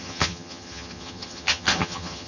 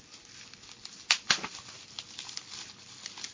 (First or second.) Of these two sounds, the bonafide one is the second